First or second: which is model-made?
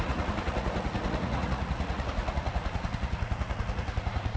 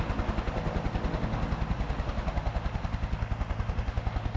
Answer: first